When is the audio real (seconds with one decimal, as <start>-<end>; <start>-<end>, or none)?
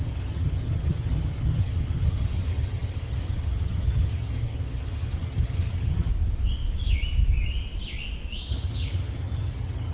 6.1-8.5